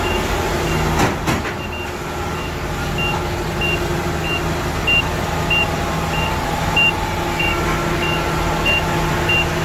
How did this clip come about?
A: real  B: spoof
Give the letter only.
A